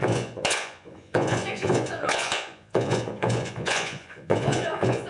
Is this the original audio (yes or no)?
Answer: no